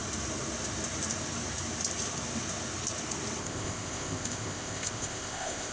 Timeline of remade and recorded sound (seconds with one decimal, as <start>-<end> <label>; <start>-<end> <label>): 0.0-3.4 recorded; 3.4-5.7 remade